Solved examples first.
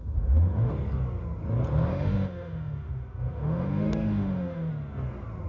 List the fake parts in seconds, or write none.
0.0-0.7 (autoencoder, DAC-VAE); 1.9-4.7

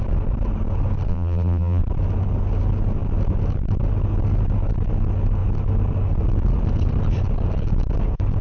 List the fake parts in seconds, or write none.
1.1-1.8 (vocoder, BigVGAN v2)